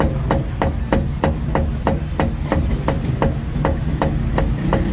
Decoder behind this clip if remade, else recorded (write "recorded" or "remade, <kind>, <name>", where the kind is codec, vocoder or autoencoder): recorded